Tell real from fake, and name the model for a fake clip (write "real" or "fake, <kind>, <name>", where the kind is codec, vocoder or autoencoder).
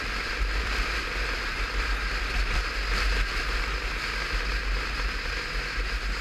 real